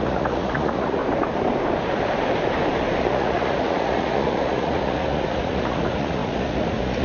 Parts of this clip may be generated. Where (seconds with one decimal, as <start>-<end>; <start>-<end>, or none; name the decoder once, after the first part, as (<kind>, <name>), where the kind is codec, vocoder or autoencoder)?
0.0-1.0 (vocoder, Vocos); 3.0-7.0